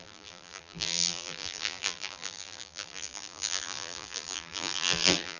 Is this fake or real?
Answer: fake